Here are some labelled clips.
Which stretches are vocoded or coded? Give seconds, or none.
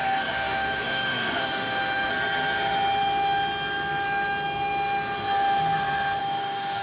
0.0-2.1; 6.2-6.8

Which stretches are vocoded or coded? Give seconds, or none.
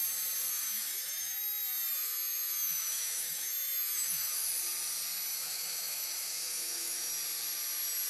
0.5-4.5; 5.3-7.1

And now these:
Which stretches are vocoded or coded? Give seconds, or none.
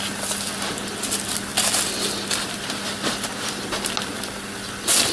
none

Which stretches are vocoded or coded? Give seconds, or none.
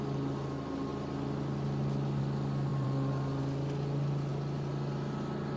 2.7-3.4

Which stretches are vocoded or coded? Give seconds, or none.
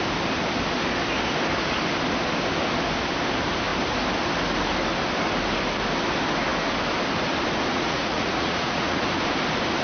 7.7-9.0